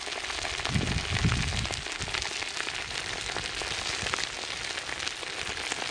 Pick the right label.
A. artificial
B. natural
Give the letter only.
B